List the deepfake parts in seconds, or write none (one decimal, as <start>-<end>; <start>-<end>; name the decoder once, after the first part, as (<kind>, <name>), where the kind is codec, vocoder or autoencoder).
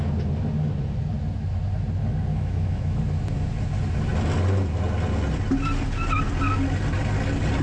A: 2.3-3.0 (autoencoder, DAC-VAE)